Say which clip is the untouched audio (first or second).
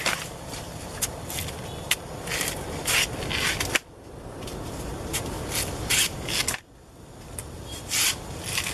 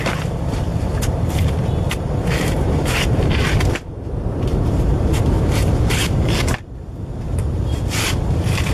first